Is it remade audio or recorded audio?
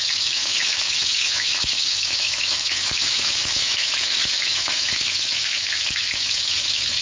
remade